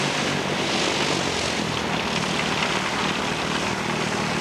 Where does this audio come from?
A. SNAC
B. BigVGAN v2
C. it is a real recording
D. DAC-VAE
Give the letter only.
C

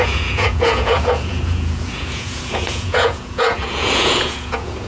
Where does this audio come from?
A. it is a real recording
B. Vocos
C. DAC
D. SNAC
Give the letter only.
B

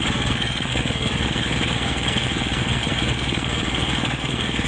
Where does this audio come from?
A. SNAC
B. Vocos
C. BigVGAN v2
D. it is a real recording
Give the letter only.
A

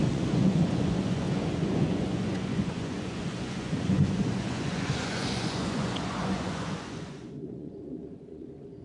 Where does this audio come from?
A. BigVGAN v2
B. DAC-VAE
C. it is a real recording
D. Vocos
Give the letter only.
D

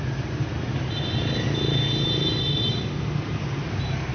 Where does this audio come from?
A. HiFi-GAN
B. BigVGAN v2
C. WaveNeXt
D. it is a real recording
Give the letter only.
D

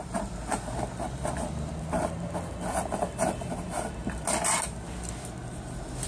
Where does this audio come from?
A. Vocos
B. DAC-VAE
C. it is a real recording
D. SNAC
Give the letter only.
C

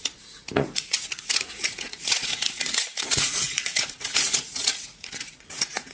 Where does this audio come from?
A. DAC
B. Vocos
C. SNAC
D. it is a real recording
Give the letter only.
B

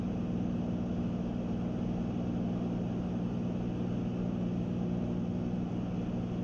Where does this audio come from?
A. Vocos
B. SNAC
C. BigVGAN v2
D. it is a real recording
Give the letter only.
D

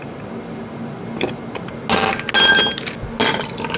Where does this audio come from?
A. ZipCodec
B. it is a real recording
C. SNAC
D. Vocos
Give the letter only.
B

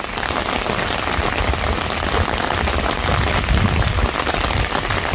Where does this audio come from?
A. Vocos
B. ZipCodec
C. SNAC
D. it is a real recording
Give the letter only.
D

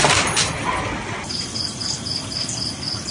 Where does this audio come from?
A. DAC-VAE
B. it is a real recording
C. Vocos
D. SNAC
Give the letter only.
B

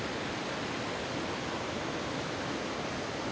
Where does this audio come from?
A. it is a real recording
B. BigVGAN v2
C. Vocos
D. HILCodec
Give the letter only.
A